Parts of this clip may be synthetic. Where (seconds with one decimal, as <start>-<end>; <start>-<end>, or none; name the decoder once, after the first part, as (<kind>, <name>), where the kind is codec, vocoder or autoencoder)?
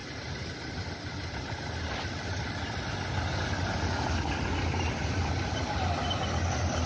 none